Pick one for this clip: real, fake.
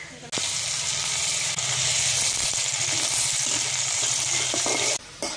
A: real